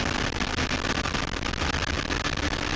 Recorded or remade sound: recorded